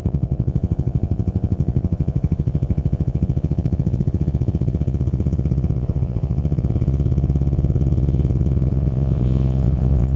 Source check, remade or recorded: remade